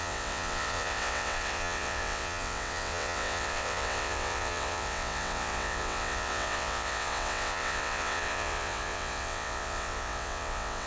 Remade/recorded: remade